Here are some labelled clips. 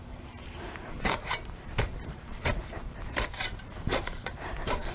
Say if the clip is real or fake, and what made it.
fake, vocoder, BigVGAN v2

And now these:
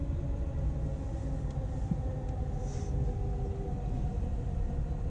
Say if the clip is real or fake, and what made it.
real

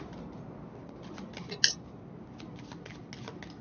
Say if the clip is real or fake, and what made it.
real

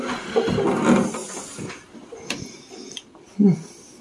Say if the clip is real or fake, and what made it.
real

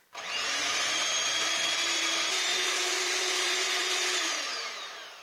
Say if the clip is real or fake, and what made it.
fake, vocoder, BigVGAN v2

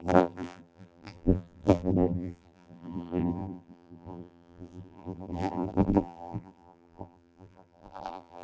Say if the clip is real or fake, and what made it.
fake, vocoder, BigVGAN v2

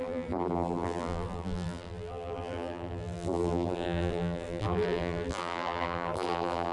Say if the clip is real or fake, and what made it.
fake, vocoder, BigVGAN v2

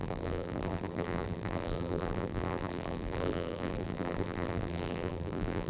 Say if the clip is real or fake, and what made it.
fake, vocoder, BigVGAN v2